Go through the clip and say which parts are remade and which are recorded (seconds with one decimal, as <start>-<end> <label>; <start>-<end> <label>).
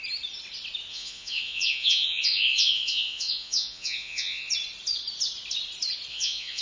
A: 0.0-0.9 recorded; 0.9-4.5 remade; 4.5-6.1 recorded; 6.1-6.6 remade